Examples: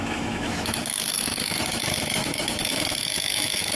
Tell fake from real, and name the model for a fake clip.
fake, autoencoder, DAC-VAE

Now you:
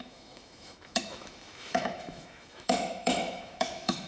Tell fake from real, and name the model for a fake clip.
fake, autoencoder, DAC-VAE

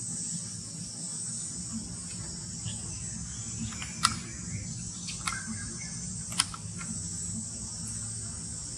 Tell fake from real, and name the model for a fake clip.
real